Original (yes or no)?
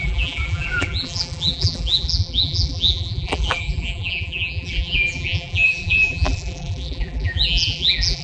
no